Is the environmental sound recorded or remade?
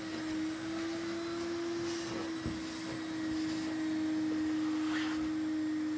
recorded